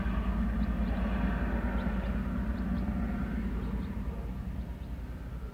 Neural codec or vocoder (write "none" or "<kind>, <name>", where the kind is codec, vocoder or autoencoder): none